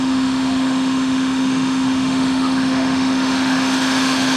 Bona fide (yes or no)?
no